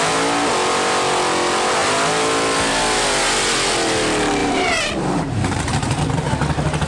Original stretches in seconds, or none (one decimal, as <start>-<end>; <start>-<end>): 0.0-4.4; 6.0-6.9